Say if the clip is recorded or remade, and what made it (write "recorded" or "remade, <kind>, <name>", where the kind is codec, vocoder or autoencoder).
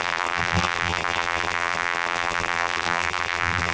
remade, vocoder, BigVGAN v2